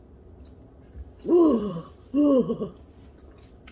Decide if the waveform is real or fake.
fake